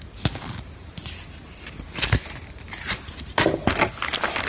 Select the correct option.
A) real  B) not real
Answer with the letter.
A